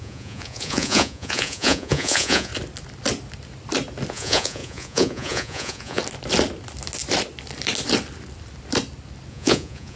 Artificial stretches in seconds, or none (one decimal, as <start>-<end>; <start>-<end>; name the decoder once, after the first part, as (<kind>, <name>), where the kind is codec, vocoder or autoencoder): 0.0-2.5 (vocoder, Vocos); 4.1-6.0; 9.3-10.0